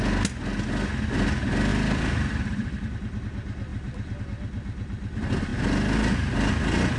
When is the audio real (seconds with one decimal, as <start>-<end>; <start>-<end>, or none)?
0.0-1.7; 3.2-3.7; 4.2-7.0